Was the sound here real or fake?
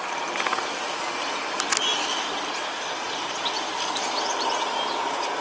real